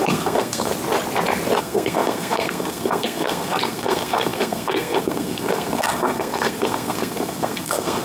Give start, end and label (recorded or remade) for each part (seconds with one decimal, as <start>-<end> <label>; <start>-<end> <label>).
0.0-0.7 remade; 0.7-1.6 recorded; 1.6-8.0 remade